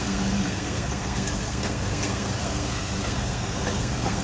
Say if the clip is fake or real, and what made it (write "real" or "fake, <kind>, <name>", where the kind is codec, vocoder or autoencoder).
fake, codec, SNAC